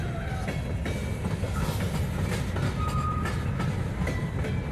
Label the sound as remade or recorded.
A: recorded